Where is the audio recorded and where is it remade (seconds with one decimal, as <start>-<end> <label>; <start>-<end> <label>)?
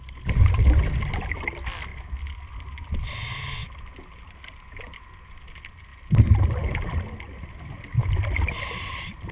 0.0-9.3 recorded